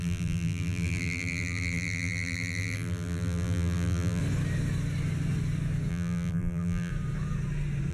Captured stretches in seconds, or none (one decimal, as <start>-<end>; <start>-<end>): 4.2-5.9; 6.9-7.9